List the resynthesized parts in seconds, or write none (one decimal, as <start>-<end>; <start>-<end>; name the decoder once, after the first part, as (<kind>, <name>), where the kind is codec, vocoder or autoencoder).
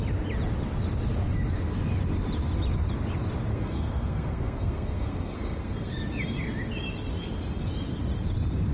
3.5-6.0 (codec, SNAC)